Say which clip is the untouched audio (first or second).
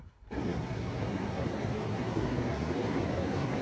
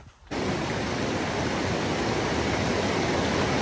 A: second